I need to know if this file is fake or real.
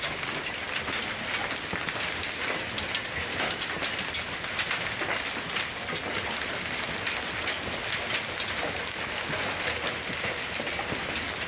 real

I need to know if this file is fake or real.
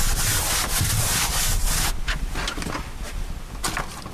real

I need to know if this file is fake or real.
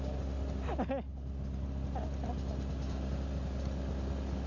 real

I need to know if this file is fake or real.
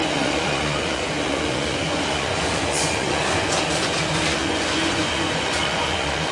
fake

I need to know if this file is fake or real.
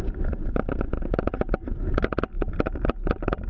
real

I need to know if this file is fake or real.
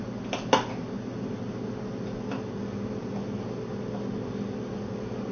real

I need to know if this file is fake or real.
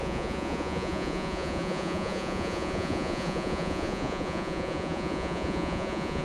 fake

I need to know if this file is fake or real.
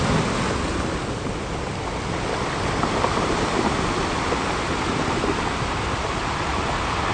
real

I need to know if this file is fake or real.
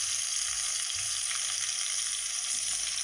real